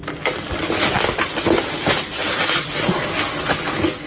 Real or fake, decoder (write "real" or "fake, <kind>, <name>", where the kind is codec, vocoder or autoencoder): real